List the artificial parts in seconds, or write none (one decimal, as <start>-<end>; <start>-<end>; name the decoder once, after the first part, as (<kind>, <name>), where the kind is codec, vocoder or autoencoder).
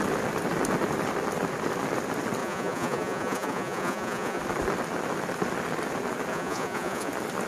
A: 2.4-4.4 (vocoder, Vocos); 6.3-7.1